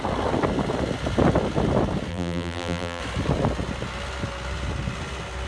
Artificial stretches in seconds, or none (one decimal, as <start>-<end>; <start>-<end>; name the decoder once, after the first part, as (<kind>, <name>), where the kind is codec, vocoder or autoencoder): 2.1-3.0 (vocoder, BigVGAN v2)